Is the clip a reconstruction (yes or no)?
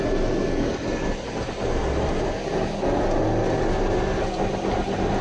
no